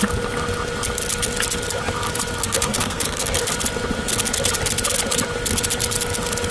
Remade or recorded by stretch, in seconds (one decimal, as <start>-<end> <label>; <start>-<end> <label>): 0.0-2.4 recorded; 2.4-3.4 remade; 3.4-6.5 recorded